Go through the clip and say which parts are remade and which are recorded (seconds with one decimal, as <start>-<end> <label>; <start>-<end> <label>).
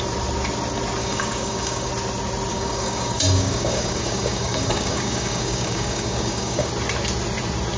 0.0-1.0 recorded; 1.0-1.9 remade; 1.9-2.5 recorded; 2.5-6.7 remade; 6.7-7.8 recorded